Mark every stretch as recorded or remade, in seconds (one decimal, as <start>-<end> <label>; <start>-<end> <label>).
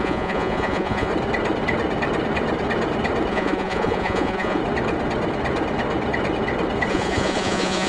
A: 0.0-1.1 remade; 1.1-3.3 recorded; 3.3-4.6 remade; 4.6-6.9 recorded; 6.9-7.9 remade